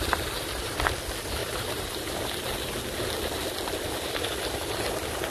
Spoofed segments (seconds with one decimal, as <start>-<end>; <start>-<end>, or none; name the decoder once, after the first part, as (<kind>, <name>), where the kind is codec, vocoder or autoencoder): 1.4-2.2 (vocoder, BigVGAN v2)